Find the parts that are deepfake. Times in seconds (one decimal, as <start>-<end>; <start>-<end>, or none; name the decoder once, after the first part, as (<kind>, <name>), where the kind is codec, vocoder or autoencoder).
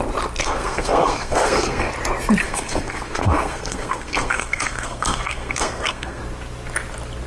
0.4-1.9 (codec, SNAC); 2.4-6.2